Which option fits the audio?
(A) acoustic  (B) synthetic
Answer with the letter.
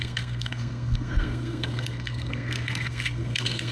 B